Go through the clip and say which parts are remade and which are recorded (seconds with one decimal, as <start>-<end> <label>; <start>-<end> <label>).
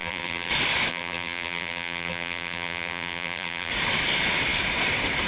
0.0-0.5 remade; 0.5-0.9 recorded; 0.9-3.7 remade; 3.7-5.3 recorded